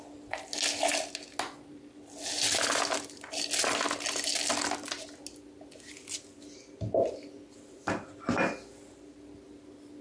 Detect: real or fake real